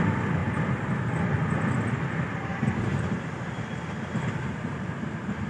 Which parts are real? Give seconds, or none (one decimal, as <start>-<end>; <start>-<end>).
0.0-0.4; 1.1-2.5